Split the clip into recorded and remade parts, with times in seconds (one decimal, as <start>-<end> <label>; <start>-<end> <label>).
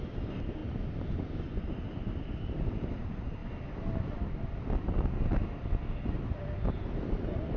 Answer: 0.0-7.6 recorded